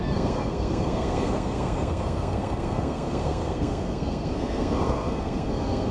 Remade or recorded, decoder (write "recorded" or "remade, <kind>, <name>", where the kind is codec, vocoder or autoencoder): remade, codec, SNAC